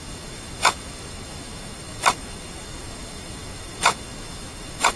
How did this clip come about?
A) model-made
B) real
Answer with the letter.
A